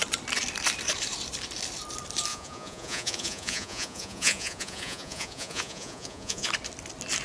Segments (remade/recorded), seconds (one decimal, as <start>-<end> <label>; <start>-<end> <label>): 0.0-2.3 recorded; 2.3-6.5 remade; 6.5-7.2 recorded

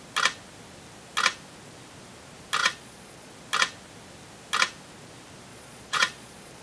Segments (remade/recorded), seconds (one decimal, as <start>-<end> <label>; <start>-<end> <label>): 0.0-2.6 recorded; 2.6-3.3 remade; 3.3-5.5 recorded; 5.5-6.6 remade

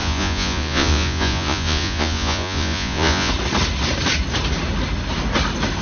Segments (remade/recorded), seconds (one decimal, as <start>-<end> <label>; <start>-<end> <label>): 0.0-3.3 remade; 3.3-5.8 recorded

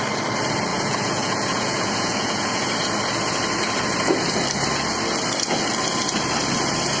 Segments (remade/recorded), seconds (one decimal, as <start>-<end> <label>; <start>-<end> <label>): 0.0-0.7 recorded; 0.7-2.7 remade; 2.7-7.0 recorded

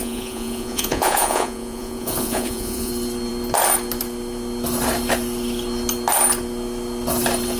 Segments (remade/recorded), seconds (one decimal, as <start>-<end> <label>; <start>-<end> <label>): 0.0-2.9 remade; 2.9-7.6 recorded

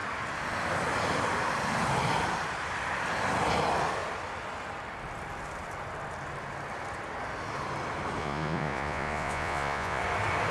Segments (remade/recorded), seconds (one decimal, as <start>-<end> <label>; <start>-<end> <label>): 0.0-8.2 recorded; 8.2-10.0 remade; 10.0-10.5 recorded